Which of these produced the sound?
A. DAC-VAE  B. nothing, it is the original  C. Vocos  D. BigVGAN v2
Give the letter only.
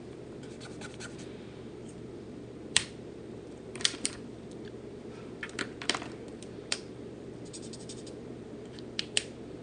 D